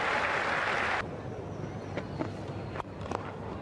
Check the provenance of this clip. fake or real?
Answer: real